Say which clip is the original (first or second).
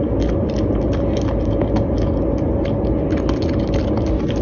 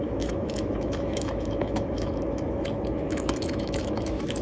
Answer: first